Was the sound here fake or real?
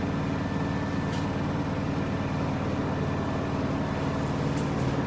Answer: real